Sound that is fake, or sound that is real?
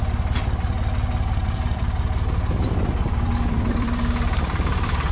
fake